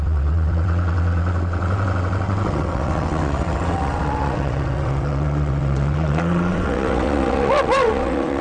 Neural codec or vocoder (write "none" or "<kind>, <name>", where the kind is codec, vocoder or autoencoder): vocoder, WaveNeXt